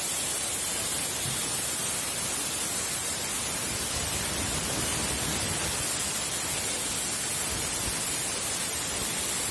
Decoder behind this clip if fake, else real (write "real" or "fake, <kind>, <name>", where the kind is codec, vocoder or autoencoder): real